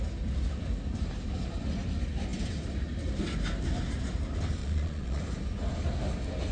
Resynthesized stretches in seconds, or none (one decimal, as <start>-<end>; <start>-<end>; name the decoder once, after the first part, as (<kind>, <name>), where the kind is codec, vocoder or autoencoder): 4.6-5.2 (vocoder, Vocos)